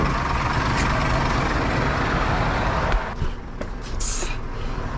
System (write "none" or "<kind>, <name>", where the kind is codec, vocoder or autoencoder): none